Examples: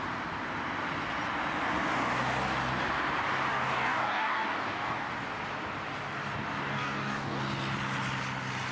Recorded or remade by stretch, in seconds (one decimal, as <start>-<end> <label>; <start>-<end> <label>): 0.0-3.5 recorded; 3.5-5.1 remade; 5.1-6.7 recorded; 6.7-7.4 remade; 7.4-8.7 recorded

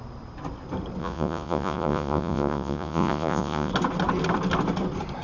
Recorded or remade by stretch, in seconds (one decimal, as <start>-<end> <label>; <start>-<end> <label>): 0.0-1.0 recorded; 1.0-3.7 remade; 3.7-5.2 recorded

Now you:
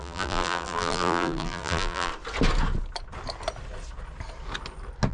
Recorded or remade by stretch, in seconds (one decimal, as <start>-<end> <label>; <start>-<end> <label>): 0.0-2.1 remade; 2.1-5.1 recorded

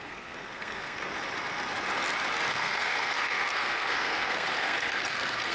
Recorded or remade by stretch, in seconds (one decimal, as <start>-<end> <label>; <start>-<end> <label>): 0.0-1.0 remade; 1.0-2.5 recorded; 2.5-5.5 remade